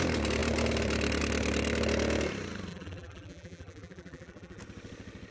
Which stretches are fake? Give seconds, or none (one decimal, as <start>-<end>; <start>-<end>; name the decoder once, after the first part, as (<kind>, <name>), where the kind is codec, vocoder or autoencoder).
2.7-4.6 (vocoder, BigVGAN v2)